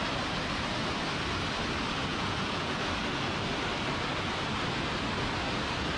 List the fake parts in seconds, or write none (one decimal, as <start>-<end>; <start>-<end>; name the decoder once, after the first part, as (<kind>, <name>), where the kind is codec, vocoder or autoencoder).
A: 2.1-2.8 (vocoder, Vocos)